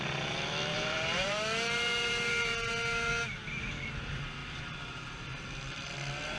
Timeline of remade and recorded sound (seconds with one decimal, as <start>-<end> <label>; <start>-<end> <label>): 0.0-0.7 recorded; 0.7-3.1 remade; 3.1-6.4 recorded